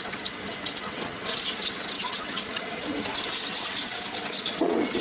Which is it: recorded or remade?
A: remade